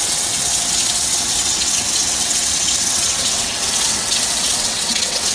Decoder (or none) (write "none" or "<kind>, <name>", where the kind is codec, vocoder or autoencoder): vocoder, WaveNeXt